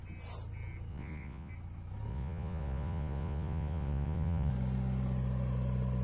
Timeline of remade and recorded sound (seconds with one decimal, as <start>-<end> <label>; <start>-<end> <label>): 0.0-0.9 recorded; 0.9-1.5 remade; 1.5-2.1 recorded; 2.1-4.5 remade; 4.5-6.0 recorded